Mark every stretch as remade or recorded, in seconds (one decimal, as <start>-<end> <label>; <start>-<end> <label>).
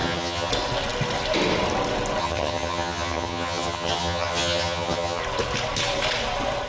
0.0-0.5 remade; 0.5-2.2 recorded; 2.2-5.2 remade; 5.2-6.7 recorded